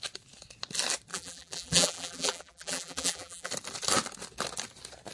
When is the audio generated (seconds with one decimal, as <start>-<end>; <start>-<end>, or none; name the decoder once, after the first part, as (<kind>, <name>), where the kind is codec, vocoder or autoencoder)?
1.1-3.5 (vocoder, BigVGAN v2)

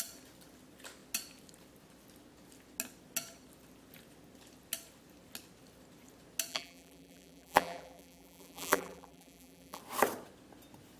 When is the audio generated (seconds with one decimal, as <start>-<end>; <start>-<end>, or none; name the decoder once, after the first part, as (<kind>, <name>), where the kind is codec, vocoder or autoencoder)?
6.5-9.8 (vocoder, BigVGAN v2)

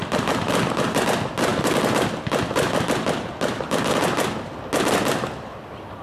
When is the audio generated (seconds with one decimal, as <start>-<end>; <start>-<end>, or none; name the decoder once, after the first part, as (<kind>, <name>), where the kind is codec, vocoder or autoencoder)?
0.0-0.5 (vocoder, BigVGAN v2)

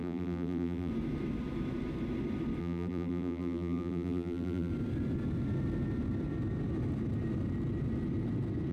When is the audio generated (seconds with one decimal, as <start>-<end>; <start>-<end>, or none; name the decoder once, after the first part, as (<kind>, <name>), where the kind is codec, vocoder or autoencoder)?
0.0-0.9 (vocoder, BigVGAN v2); 2.6-4.7

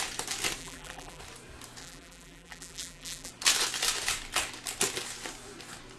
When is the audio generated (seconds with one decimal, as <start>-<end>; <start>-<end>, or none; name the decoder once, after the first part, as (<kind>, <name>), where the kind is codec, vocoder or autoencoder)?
0.6-1.2 (vocoder, BigVGAN v2); 1.8-3.3

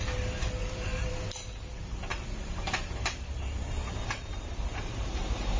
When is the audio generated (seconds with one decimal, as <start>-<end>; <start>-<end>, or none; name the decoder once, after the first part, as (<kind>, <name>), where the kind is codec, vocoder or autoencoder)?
0.6-1.1 (vocoder, BigVGAN v2); 2.1-5.6

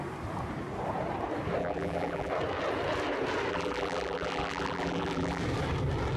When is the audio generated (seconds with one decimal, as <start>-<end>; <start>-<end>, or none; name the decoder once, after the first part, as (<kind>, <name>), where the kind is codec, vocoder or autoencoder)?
1.6-2.3 (vocoder, BigVGAN v2); 3.5-5.4